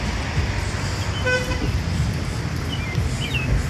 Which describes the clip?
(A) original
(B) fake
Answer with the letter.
A